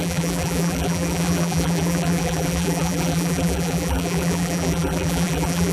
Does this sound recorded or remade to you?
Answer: remade